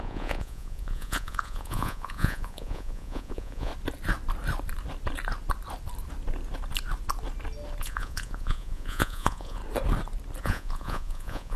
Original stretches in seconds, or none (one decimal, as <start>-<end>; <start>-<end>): 3.7-7.8; 9.6-10.4